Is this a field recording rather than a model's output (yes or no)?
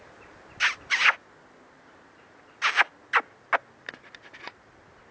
yes